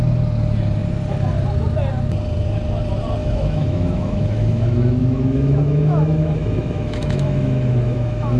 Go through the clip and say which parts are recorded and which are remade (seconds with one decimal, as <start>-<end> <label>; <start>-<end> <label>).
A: 0.0-3.2 recorded; 3.2-8.4 remade